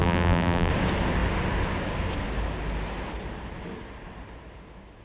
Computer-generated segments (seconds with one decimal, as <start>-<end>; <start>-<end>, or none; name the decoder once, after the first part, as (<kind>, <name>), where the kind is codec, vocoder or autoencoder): 0.0-0.7 (vocoder, BigVGAN v2)